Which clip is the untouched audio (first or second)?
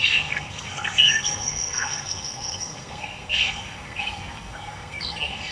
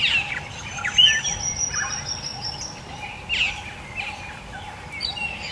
second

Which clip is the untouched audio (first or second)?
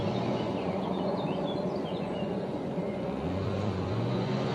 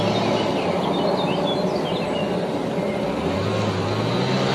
second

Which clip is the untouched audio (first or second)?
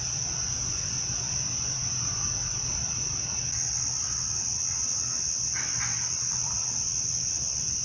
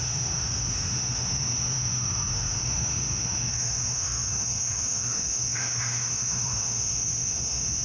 first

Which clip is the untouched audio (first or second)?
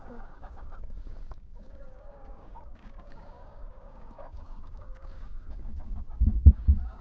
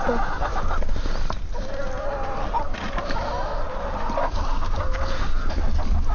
second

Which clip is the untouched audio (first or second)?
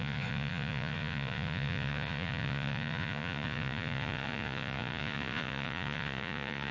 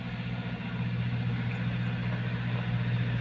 second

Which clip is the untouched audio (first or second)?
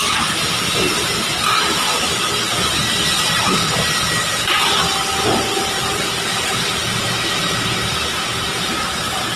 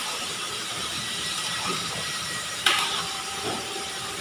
first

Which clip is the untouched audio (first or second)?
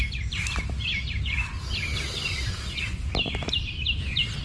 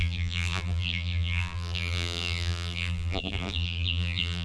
first